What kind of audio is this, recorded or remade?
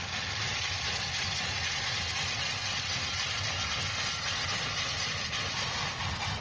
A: recorded